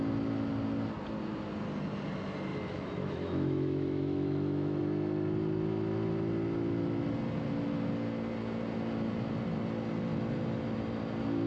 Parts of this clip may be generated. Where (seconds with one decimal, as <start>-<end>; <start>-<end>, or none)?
2.5-4.8